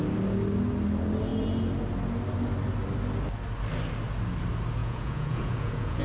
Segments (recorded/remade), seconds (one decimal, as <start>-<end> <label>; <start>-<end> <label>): 0.0-4.8 recorded; 4.8-6.0 remade